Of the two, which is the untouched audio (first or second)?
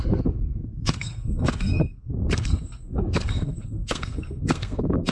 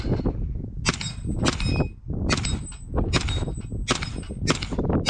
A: second